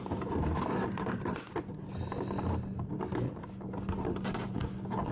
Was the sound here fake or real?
real